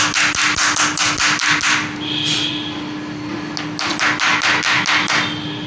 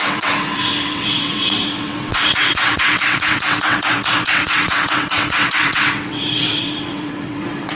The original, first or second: first